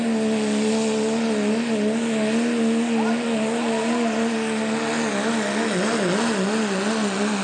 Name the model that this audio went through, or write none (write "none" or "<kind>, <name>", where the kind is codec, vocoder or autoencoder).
none